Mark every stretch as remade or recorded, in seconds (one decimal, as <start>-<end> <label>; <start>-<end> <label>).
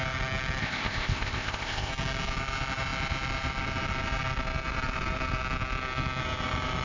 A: 0.0-0.6 recorded; 0.6-1.9 remade; 1.9-6.8 recorded